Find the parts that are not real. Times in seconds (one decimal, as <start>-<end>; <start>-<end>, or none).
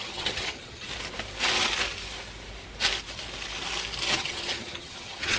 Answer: 0.0-0.9; 4.1-5.4